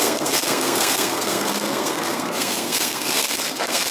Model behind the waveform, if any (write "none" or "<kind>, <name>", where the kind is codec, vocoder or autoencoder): codec, SNAC